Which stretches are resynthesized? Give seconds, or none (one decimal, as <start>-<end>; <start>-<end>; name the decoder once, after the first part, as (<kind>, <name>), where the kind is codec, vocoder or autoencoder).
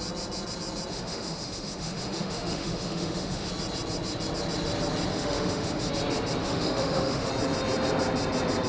0.9-3.5 (autoencoder, DAC-VAE); 5.1-5.9; 6.4-7.3